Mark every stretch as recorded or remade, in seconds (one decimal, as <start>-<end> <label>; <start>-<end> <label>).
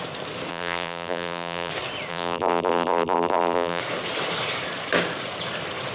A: 0.0-0.5 recorded; 0.5-1.7 remade; 1.7-2.1 recorded; 2.1-3.8 remade; 3.8-5.9 recorded